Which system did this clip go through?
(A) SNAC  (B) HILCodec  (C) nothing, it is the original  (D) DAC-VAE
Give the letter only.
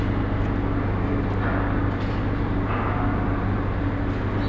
C